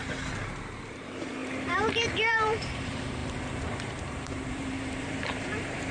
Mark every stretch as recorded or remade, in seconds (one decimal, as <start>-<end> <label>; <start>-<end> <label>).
0.0-0.9 recorded; 0.9-5.9 remade